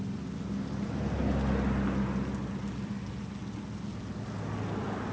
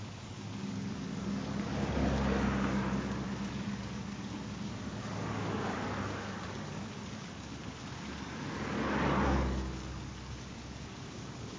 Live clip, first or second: first